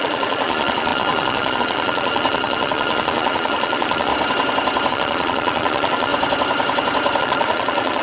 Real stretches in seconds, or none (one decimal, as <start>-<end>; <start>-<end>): 4.1-4.9; 6.1-7.2